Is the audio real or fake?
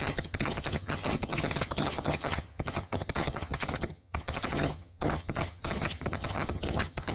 fake